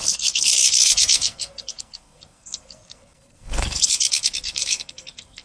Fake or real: fake